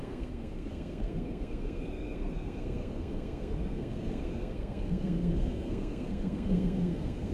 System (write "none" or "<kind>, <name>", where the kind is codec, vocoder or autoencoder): codec, SNAC